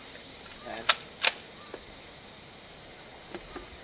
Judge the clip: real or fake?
real